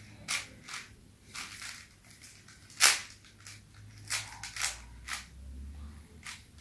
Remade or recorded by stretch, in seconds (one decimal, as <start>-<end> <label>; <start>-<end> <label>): 0.0-6.6 recorded